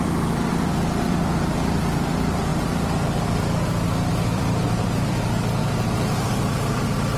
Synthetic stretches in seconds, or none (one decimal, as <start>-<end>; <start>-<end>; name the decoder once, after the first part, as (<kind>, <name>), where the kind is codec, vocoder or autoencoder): 0.0-0.5 (vocoder, BigVGAN v2); 1.1-2.5; 4.1-7.2